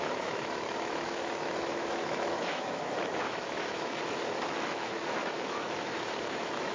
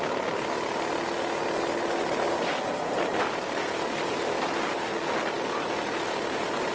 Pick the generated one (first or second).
first